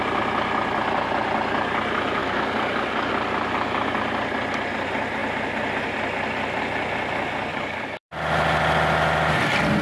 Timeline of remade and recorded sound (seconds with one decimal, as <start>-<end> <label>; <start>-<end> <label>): 0.0-2.2 recorded; 2.2-3.1 remade; 3.1-7.5 recorded; 7.5-8.1 remade; 8.1-9.8 recorded